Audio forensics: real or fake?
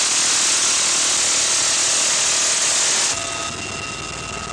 real